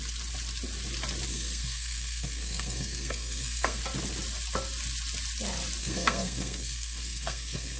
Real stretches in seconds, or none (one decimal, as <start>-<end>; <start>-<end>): 0.0-1.3; 3.8-5.8